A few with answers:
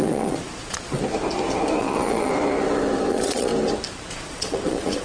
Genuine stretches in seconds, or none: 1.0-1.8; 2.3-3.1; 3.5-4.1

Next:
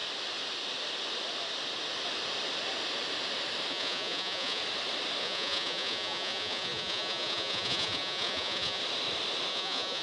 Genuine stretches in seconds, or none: 0.0-3.7; 4.6-5.2; 8.8-9.5

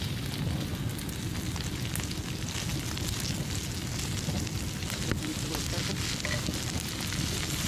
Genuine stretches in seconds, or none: 0.0-7.7

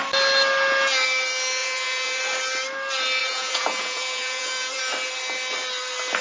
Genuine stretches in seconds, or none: 0.0-1.6; 2.2-3.2; 4.8-6.2

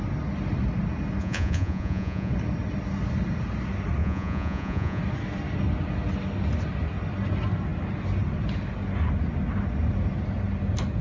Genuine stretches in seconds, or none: 0.0-1.2; 2.3-4.0; 5.0-11.0

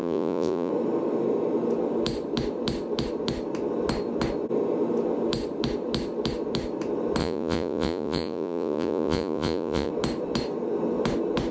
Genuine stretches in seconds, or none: 0.7-7.2; 9.9-11.5

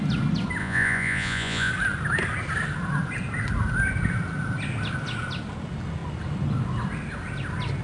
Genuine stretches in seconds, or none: 0.0-0.6; 1.7-7.8